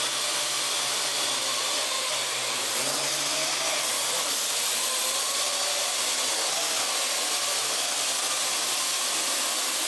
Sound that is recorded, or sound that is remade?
recorded